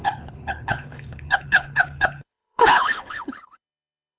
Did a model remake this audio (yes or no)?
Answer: yes